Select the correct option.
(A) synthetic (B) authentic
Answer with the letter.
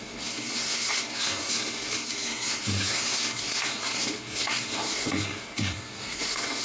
A